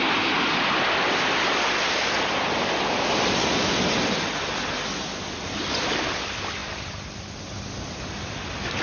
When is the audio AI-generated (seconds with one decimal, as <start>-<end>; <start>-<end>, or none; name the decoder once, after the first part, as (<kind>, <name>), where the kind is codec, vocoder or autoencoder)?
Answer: none